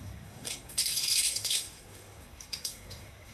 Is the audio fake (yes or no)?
yes